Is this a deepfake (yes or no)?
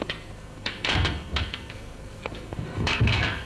yes